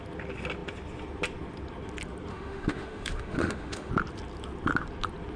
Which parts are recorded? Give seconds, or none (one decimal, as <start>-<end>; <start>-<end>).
0.0-2.3; 3.9-5.4